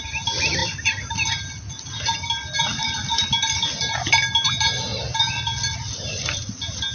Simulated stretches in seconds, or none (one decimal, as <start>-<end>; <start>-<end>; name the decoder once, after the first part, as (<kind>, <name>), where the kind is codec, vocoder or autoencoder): none